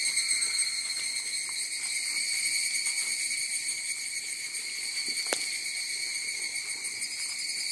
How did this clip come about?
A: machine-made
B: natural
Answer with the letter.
B